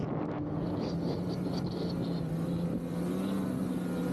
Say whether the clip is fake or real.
real